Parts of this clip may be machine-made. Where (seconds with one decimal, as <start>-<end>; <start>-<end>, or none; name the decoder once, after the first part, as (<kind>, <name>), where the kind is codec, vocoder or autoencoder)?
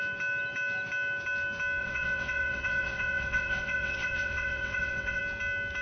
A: 1.8-5.2 (vocoder, WaveNeXt)